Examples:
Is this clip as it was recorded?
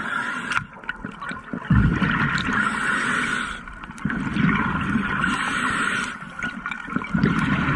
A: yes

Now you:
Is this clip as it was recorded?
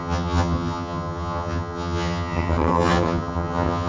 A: no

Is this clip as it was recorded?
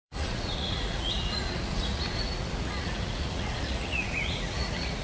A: no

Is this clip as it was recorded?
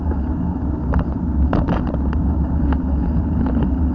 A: yes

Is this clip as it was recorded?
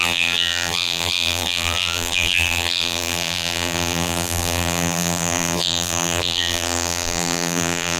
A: no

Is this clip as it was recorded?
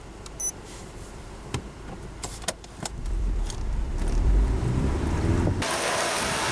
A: no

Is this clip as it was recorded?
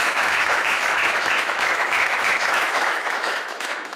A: no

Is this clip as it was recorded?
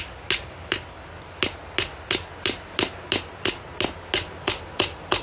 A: yes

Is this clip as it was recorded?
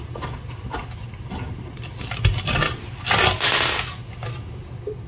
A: yes